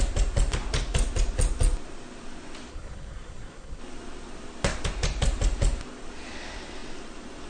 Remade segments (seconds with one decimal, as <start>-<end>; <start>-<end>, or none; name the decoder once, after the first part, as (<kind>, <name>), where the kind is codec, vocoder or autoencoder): 2.7-3.8 (codec, SNAC)